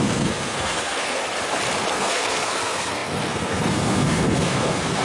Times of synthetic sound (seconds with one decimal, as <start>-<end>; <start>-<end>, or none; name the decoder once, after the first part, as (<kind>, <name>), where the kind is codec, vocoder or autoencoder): 0.0-1.2 (codec, SNAC); 1.9-5.0